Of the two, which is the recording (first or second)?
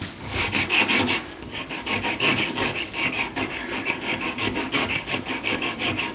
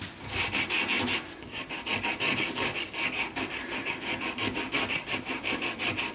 second